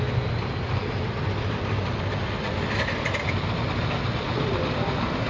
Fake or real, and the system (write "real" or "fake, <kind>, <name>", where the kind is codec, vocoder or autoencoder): real